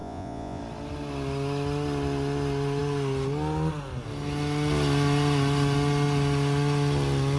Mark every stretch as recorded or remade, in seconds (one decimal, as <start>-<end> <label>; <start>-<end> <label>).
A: 0.0-0.6 remade; 0.6-7.4 recorded